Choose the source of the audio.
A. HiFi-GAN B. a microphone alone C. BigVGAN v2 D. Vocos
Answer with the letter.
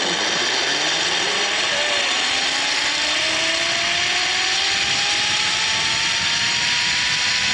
B